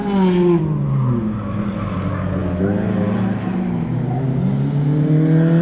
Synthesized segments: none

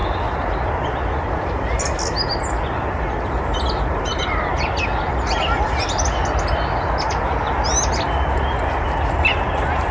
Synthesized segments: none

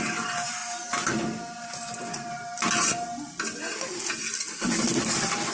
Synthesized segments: none